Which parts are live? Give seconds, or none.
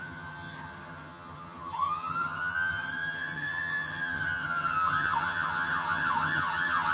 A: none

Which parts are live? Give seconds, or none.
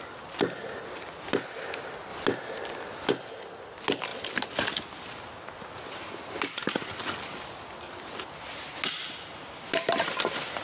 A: 0.0-10.6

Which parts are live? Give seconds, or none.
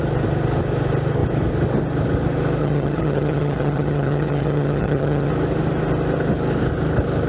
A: 0.0-2.6; 5.3-7.3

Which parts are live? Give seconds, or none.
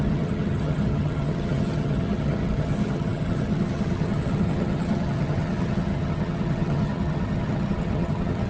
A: none